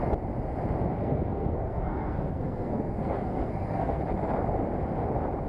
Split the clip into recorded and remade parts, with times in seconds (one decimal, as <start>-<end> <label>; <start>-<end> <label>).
0.0-1.0 recorded; 1.0-4.0 remade; 4.0-5.5 recorded